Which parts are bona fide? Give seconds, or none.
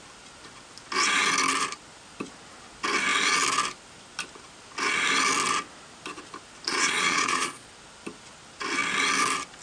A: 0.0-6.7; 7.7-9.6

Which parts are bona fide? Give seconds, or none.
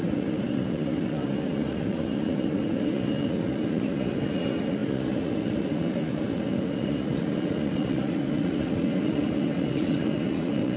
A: none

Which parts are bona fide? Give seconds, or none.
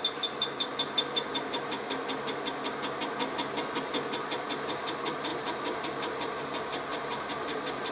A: 0.0-5.3; 6.4-6.9